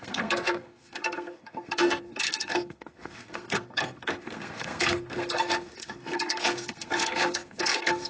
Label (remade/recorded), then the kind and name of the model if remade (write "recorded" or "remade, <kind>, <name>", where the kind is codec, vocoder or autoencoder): remade, codec, SNAC